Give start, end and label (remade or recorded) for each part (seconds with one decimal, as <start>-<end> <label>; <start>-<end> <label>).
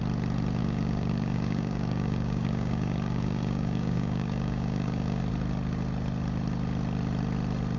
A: 0.0-0.6 recorded; 0.6-5.2 remade; 5.2-7.8 recorded